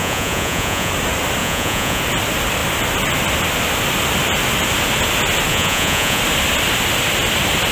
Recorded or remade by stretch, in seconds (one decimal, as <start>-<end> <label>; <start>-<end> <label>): 0.0-0.9 remade; 0.9-1.4 recorded; 1.4-2.0 remade; 2.0-5.5 recorded; 5.5-6.2 remade; 6.2-7.7 recorded